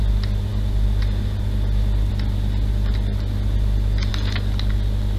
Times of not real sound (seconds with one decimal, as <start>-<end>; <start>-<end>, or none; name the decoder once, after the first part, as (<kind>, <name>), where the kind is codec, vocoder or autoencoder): none